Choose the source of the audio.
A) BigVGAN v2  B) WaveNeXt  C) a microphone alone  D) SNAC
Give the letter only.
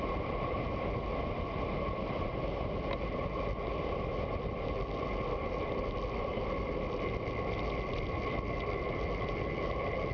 C